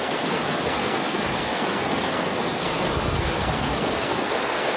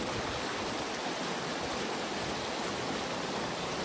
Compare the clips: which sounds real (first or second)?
second